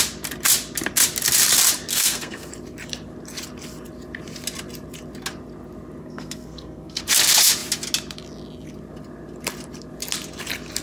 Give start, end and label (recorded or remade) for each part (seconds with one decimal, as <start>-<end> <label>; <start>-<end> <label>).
0.0-1.9 recorded; 1.9-2.5 remade; 2.5-6.0 recorded; 6.0-7.0 remade; 7.0-10.8 recorded